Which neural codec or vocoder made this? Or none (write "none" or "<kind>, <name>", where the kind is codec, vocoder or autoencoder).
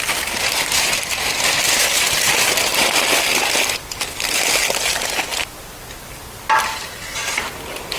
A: vocoder, BigVGAN v2